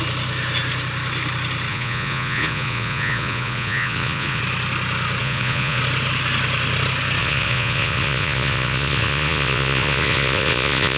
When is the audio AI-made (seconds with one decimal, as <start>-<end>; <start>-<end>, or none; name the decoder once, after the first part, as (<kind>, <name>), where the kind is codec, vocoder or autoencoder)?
1.7-4.4 (vocoder, Vocos); 5.2-5.8; 7.2-11.0